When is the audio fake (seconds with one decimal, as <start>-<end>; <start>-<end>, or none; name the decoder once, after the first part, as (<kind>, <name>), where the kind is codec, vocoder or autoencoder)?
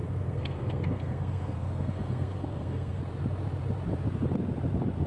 0.0-3.0 (codec, SNAC)